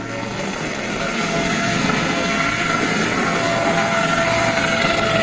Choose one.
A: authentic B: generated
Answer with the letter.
B